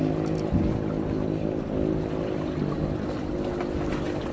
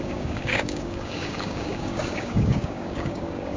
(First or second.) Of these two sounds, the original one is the first